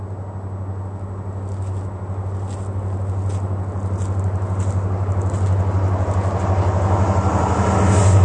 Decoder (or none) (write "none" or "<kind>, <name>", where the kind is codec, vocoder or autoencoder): none